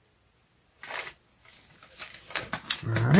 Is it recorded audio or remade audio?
recorded